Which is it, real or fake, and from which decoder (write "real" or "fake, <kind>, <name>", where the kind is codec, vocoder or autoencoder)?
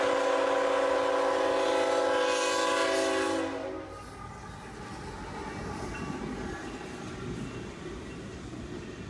real